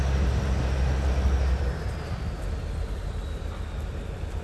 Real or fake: real